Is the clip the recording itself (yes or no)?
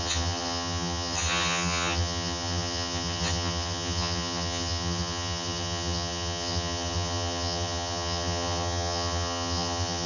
no